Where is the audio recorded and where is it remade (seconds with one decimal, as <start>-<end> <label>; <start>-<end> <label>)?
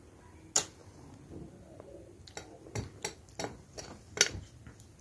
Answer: 0.0-5.0 recorded